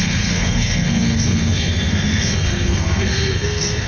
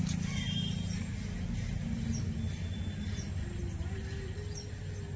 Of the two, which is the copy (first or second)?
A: first